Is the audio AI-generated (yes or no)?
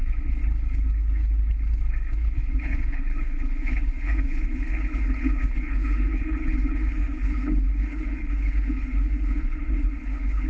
yes